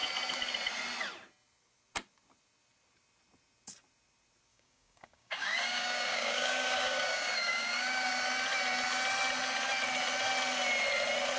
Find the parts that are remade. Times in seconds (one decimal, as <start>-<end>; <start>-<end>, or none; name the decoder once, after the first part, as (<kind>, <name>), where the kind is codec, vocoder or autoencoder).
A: 4.5-8.1 (codec, DAC)